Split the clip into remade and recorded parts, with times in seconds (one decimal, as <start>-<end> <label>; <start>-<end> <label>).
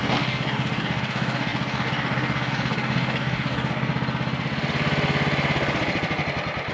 0.0-3.9 remade; 3.9-6.7 recorded